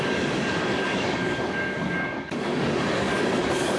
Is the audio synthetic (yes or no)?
yes